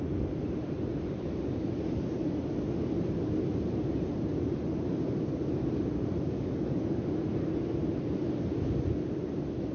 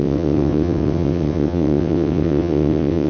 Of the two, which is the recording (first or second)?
first